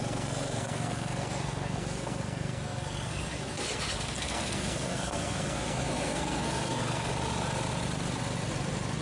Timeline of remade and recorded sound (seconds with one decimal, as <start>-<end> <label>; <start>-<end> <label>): 0.0-7.1 remade; 7.1-9.0 recorded